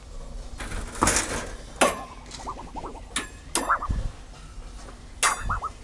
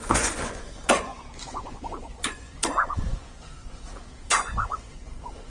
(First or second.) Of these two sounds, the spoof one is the second